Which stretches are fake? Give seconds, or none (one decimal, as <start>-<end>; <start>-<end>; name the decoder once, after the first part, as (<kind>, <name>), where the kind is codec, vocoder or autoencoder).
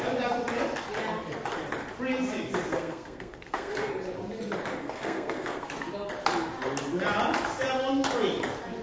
2.7-3.9 (codec, SNAC); 4.8-5.7